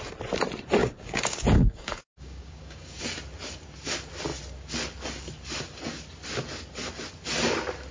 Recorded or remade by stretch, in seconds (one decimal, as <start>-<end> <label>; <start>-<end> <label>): 0.0-0.8 recorded; 0.8-3.0 remade; 3.0-7.9 recorded